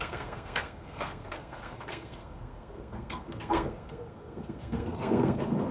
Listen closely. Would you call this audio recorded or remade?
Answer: remade